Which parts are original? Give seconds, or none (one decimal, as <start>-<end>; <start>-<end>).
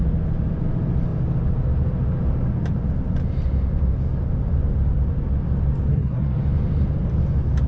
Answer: 0.0-5.9; 6.4-7.7